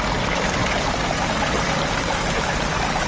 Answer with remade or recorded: recorded